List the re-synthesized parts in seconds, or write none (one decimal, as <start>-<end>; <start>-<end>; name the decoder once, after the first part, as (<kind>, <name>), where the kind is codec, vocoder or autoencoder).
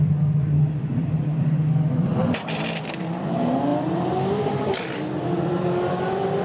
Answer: 0.0-3.7 (vocoder, BigVGAN v2); 4.3-6.4